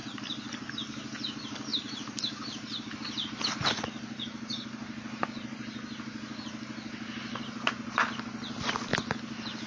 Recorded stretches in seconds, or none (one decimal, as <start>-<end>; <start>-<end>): 0.7-1.7; 2.9-9.7